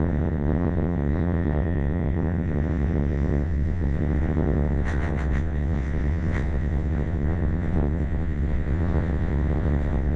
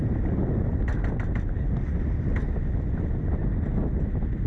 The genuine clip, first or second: second